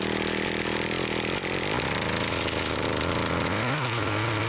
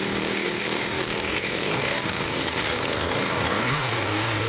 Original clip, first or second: first